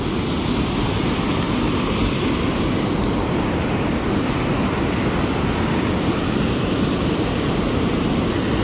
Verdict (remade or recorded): recorded